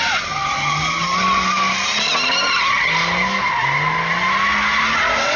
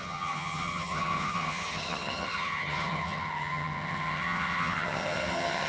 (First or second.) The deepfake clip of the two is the second